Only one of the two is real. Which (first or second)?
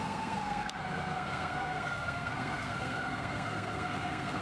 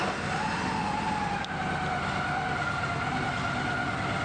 second